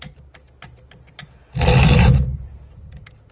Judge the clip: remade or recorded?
recorded